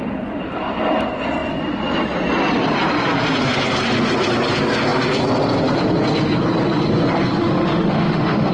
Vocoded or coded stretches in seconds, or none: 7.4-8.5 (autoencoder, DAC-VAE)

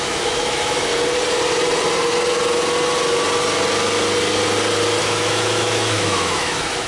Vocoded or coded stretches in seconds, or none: 0.0-0.9 (autoencoder, DAC-VAE); 5.0-6.9